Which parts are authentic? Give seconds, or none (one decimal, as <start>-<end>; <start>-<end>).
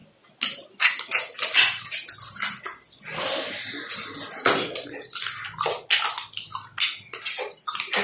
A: 0.0-8.0